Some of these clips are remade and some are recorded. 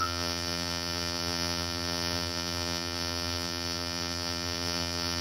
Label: remade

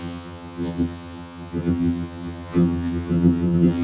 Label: remade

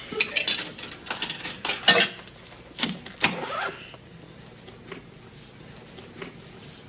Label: recorded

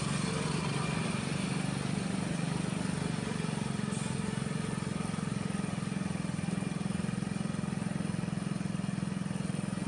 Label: recorded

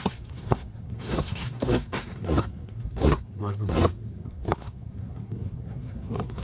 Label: remade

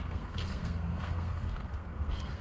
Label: remade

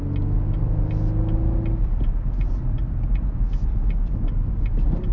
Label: recorded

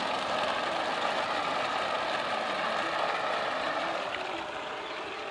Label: recorded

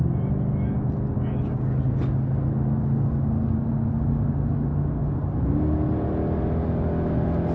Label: recorded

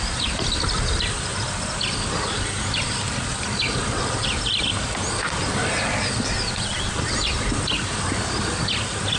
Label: recorded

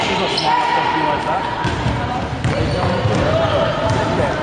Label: recorded